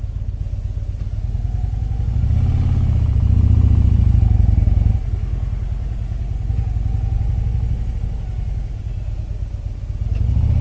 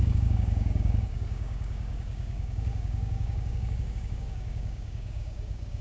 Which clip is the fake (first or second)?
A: second